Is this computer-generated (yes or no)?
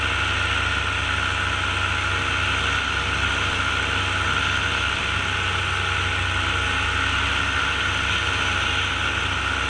no